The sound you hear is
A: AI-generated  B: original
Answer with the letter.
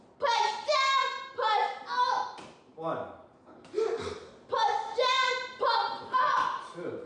B